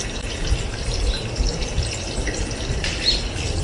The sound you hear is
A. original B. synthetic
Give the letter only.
A